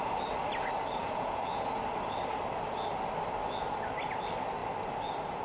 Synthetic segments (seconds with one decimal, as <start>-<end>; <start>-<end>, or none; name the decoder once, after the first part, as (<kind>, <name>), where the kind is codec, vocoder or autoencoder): 1.0-1.7 (vocoder, Vocos)